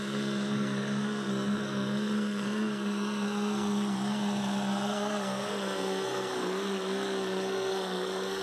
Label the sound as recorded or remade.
remade